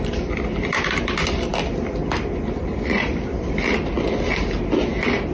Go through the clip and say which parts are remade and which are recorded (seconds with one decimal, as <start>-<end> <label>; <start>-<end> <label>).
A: 0.0-5.3 recorded